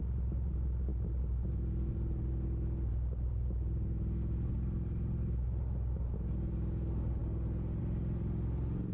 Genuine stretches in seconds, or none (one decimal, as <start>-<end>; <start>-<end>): 0.0-8.9